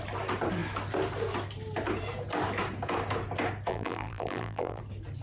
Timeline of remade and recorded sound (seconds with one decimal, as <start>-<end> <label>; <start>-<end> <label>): 0.0-3.7 recorded; 3.7-4.8 remade; 4.8-5.2 recorded